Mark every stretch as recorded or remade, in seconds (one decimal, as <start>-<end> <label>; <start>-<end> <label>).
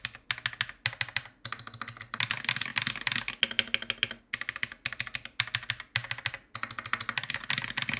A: 0.0-8.0 recorded